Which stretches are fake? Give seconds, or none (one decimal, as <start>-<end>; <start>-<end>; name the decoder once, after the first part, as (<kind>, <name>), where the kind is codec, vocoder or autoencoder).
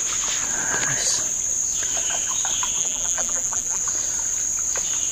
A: 2.8-3.8 (vocoder, BigVGAN v2)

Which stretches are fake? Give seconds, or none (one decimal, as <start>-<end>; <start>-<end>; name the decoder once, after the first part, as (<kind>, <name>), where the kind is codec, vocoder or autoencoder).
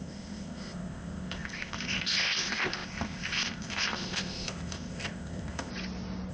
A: 0.0-5.7 (codec, ZipCodec)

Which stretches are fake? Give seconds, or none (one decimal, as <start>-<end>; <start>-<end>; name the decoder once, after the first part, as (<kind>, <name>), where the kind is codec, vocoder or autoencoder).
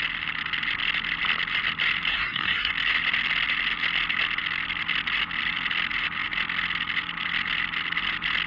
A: 2.1-2.7 (codec, SNAC)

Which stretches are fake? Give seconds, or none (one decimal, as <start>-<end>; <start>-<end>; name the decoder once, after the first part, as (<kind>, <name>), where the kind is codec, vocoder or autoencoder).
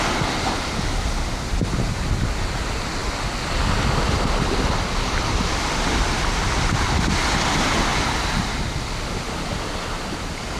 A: none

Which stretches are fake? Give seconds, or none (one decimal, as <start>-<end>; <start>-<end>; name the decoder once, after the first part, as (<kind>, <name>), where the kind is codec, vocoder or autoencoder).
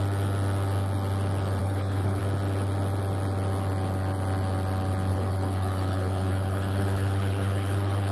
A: 1.6-2.2 (codec, HILCodec); 5.1-8.1